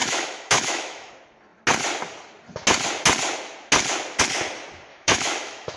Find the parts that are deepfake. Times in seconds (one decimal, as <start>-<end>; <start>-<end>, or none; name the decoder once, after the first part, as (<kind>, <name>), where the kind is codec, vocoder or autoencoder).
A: 0.0-1.1 (autoencoder, DAC-VAE); 4.9-5.8